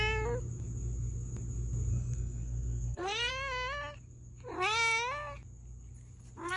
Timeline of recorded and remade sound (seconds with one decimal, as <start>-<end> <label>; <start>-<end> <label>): 0.0-1.9 recorded; 1.9-3.3 remade; 3.3-6.6 recorded